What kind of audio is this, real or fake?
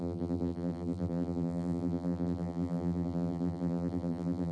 fake